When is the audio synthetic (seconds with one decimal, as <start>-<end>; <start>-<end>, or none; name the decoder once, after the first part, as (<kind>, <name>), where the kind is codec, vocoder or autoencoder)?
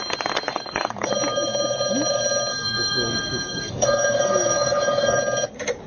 0.5-1.1 (codec, DAC); 2.5-5.2